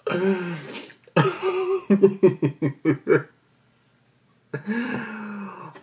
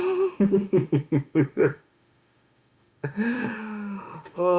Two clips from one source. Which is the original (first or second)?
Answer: first